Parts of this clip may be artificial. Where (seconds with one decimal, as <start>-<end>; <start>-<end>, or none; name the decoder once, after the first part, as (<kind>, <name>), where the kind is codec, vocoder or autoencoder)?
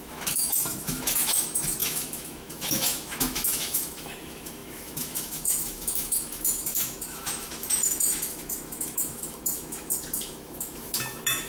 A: 0.0-11.5 (autoencoder, DAC-VAE)